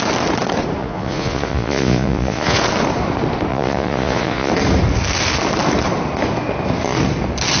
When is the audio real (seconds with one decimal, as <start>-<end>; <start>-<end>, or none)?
0.0-0.8; 2.6-3.5; 4.5-7.6